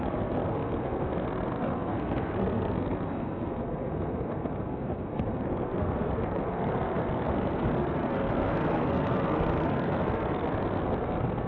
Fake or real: fake